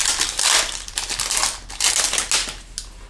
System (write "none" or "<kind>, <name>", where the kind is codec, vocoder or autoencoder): none